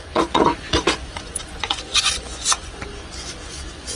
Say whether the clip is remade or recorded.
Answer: remade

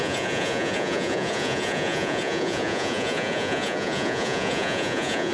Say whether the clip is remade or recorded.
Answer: remade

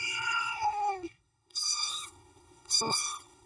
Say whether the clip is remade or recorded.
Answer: remade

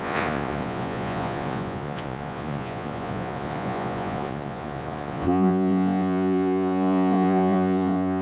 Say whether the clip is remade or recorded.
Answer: remade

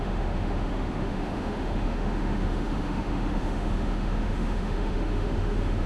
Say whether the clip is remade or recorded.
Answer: remade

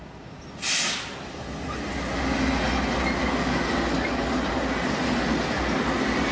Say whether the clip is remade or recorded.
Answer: recorded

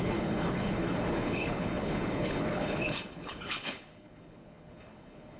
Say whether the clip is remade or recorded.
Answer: remade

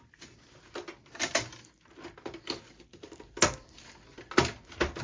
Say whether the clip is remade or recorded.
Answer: recorded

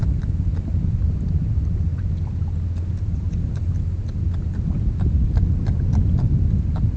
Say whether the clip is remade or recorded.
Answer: recorded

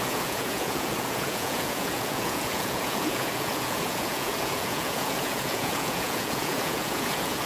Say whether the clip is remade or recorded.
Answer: remade